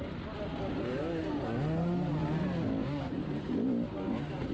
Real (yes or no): yes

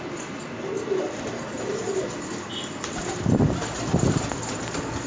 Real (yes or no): yes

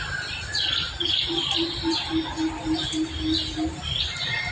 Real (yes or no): yes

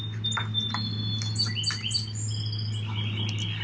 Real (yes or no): yes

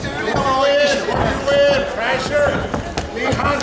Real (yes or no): yes